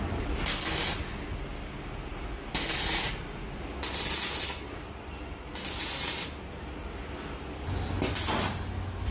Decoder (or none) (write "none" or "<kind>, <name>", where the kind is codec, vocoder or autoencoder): none